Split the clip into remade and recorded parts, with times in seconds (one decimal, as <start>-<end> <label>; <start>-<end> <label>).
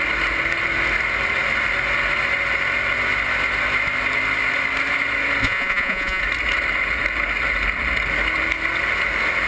0.0-5.4 recorded; 5.4-6.2 remade; 6.2-9.5 recorded